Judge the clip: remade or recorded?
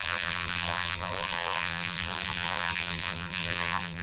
remade